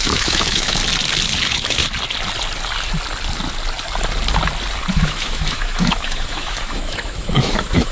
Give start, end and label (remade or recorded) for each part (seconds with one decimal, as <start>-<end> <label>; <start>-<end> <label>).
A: 0.0-0.8 remade; 0.8-1.4 recorded; 1.4-1.8 remade; 1.8-4.9 recorded; 4.9-7.9 remade